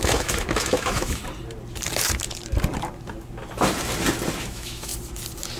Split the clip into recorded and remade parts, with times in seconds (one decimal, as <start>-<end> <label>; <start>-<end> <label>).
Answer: 0.0-1.2 remade; 1.2-4.4 recorded; 4.4-4.9 remade; 4.9-5.6 recorded